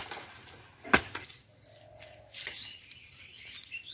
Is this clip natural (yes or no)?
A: yes